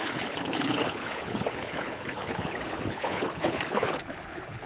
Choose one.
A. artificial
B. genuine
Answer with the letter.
A